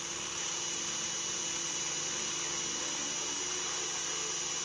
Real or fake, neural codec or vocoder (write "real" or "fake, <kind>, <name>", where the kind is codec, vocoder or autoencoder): real